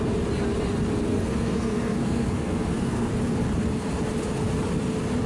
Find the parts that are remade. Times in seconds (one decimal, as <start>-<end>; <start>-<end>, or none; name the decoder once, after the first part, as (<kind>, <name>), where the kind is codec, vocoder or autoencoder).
1.1-3.1 (codec, SNAC)